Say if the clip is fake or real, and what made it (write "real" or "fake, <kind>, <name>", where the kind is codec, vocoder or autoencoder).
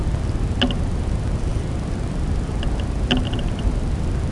real